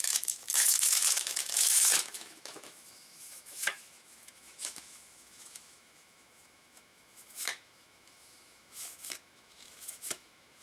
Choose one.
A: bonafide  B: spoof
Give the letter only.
B